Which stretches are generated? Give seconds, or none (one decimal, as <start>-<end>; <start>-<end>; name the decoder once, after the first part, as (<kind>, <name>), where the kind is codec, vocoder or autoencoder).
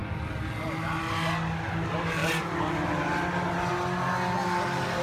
none